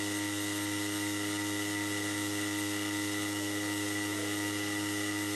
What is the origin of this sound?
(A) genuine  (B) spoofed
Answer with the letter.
A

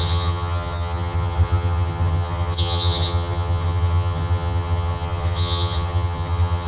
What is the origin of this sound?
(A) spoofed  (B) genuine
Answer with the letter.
A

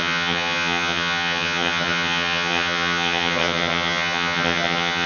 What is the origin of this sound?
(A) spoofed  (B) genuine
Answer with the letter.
A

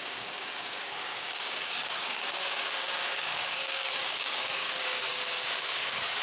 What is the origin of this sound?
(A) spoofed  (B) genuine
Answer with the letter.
A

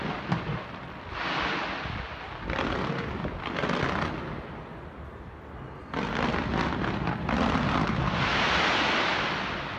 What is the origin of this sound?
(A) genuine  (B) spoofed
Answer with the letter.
A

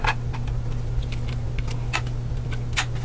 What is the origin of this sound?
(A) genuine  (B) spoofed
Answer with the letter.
A